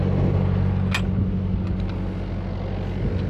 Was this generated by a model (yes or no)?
no